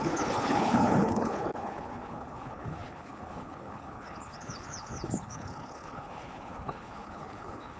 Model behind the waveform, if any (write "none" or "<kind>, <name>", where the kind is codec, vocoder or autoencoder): codec, HILCodec